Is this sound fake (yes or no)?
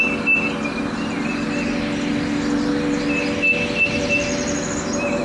no